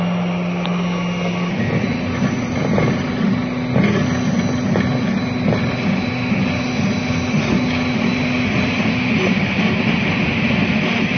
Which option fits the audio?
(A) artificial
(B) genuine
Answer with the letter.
B